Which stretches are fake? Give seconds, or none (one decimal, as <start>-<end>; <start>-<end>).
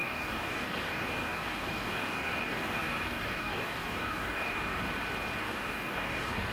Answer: 0.0-4.8; 5.4-6.5